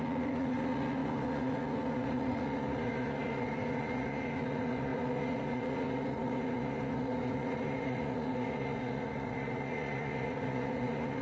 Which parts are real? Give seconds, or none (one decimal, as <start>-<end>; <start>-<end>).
none